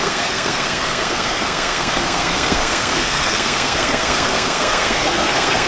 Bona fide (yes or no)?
no